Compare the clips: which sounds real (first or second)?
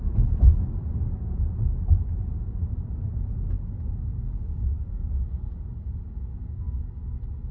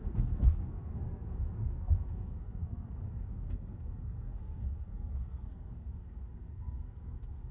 first